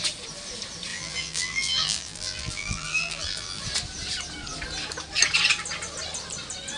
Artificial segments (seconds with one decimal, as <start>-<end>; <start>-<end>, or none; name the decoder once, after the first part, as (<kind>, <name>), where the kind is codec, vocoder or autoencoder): 0.9-3.6 (vocoder, BigVGAN v2)